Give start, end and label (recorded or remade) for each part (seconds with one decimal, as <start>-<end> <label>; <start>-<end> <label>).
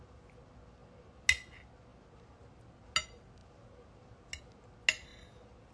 0.0-5.7 recorded